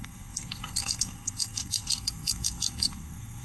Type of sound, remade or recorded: remade